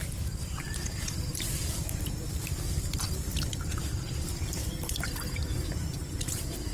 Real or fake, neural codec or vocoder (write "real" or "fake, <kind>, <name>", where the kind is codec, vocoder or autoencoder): fake, vocoder, BigVGAN v2